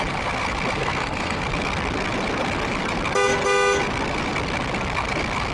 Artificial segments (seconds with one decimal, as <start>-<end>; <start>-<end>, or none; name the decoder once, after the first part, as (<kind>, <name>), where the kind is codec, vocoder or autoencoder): 0.8-1.4 (codec, SNAC)